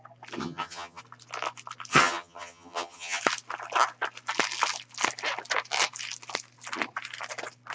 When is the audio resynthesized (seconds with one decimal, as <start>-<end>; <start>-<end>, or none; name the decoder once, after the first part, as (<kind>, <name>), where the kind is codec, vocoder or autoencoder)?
0.4-1.0 (vocoder, HiFi-GAN); 1.9-3.2